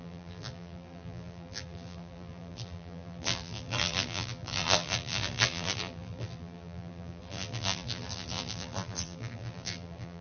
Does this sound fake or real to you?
fake